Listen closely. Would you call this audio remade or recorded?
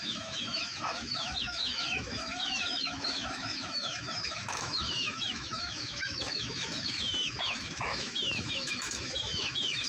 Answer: remade